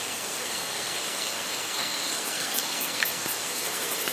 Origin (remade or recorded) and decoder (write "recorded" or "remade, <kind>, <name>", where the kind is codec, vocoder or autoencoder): remade, codec, SNAC